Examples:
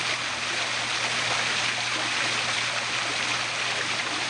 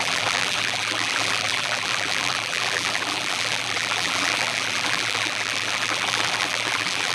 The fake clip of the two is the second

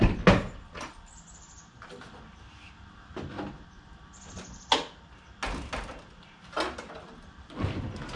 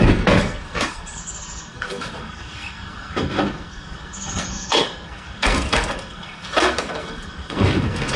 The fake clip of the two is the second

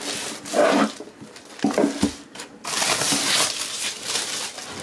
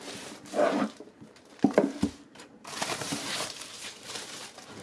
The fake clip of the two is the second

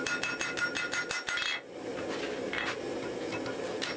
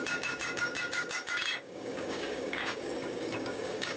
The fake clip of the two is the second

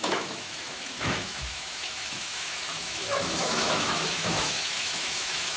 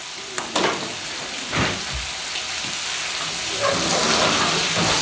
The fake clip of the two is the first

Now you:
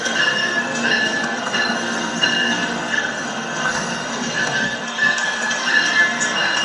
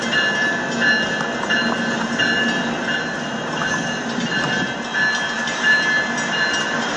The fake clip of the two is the first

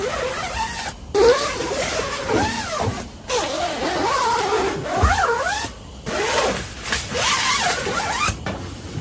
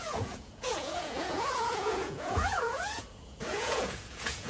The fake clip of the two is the second